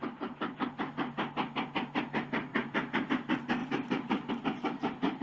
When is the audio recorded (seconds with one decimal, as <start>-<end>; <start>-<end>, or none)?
0.0-2.5; 3.1-3.6; 4.3-5.2